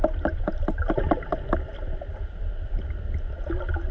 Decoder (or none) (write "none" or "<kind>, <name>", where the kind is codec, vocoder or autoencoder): none